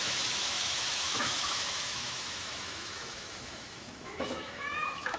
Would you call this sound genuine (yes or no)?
no